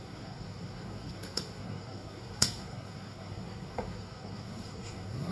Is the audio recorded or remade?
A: remade